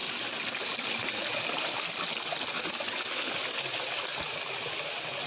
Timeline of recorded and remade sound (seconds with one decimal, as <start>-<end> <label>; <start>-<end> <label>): 0.0-5.3 recorded